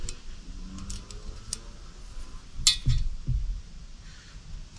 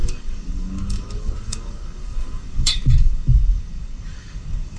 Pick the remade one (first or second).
second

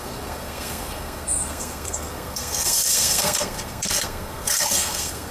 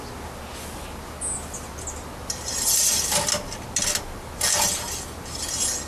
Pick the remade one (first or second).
first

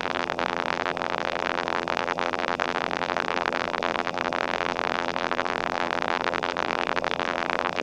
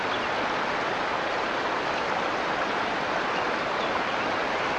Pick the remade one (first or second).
first